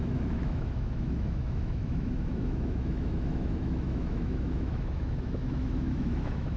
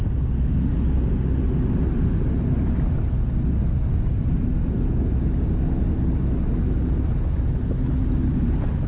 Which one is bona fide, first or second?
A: second